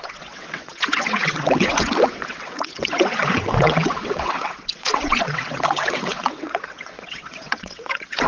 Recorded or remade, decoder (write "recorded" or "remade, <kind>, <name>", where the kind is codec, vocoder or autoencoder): remade, vocoder, WaveNeXt